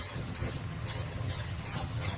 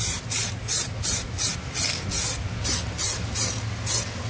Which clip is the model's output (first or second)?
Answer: first